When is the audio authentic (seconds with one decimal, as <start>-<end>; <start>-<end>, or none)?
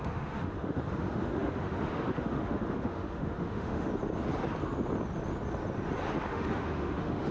3.9-6.3